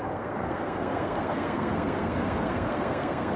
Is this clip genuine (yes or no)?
no